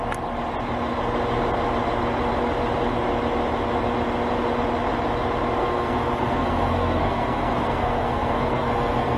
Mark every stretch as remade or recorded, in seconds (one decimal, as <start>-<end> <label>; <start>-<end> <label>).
0.0-5.6 recorded; 5.6-9.2 remade